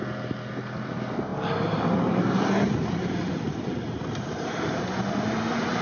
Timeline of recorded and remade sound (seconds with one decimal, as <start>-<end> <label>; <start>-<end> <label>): 0.0-5.8 recorded